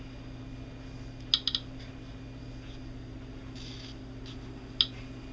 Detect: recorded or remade recorded